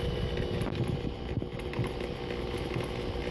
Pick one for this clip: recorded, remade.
recorded